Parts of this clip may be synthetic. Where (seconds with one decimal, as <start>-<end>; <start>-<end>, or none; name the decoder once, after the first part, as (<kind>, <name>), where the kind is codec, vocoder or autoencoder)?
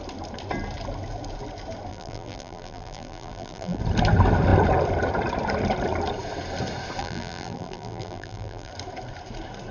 1.9-3.8 (vocoder, BigVGAN v2); 7.0-8.7